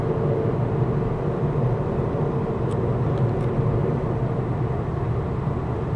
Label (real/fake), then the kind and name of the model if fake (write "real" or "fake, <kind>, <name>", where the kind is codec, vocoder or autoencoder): real